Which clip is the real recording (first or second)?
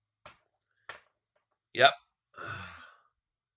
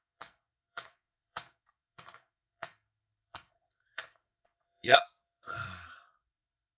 first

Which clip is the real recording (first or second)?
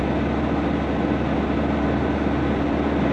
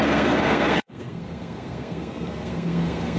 first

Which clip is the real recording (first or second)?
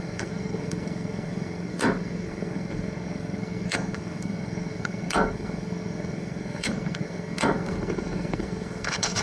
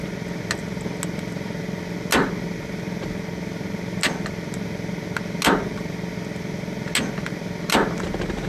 second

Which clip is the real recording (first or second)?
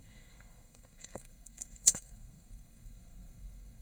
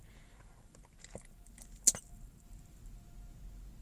second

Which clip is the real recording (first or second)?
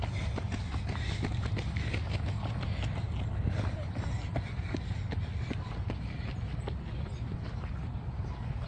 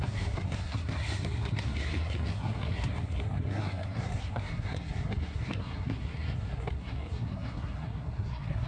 first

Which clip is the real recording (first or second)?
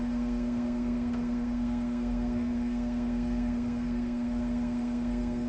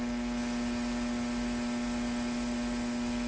second